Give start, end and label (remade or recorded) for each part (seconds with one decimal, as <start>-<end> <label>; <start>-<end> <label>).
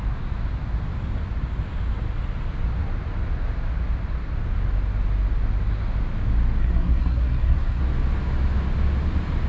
0.0-6.6 recorded; 6.6-7.8 remade; 7.8-9.5 recorded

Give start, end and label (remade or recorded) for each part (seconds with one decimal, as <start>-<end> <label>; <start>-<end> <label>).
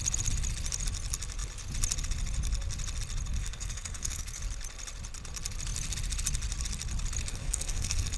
0.0-3.4 recorded; 3.4-4.4 remade; 4.4-7.3 recorded; 7.3-8.2 remade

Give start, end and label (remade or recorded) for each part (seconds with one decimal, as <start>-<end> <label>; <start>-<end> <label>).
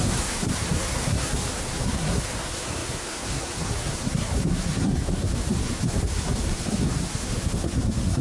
0.0-8.2 remade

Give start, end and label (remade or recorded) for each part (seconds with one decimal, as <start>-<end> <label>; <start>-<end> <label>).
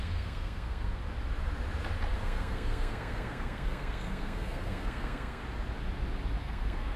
0.0-1.0 remade; 1.0-2.1 recorded; 2.1-5.4 remade; 5.4-6.4 recorded; 6.4-7.0 remade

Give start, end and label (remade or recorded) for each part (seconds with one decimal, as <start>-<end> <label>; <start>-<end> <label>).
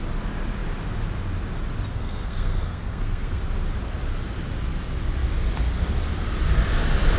0.0-1.9 recorded; 1.9-3.4 remade; 3.4-7.2 recorded